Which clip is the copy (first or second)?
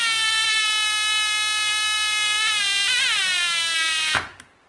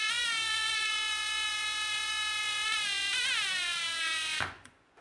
second